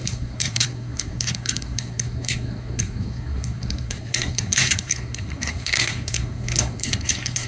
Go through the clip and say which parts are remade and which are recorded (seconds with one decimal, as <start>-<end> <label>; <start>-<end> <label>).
0.0-7.5 remade